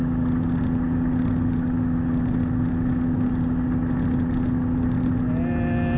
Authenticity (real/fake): real